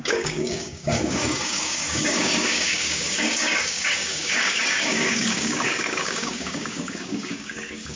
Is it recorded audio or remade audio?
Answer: remade